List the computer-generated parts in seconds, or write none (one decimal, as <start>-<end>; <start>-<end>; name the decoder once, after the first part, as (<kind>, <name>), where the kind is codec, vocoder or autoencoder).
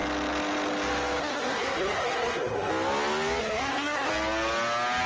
1.2-2.7 (codec, SNAC); 3.4-4.1